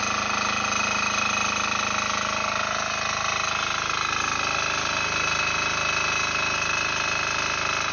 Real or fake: real